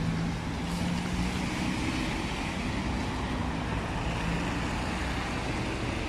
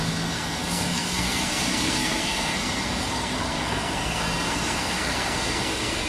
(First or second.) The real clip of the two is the first